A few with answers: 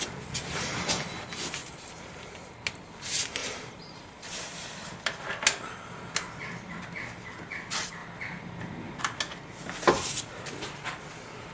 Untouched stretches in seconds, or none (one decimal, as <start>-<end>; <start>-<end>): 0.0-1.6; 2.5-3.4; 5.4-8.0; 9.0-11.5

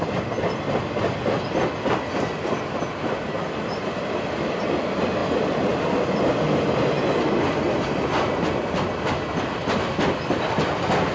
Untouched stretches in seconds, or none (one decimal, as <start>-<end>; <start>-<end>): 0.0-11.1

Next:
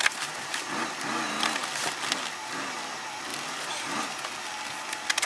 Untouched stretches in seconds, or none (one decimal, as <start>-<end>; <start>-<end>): 1.6-2.3